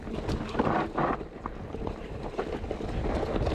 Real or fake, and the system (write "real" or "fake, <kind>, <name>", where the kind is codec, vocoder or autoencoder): real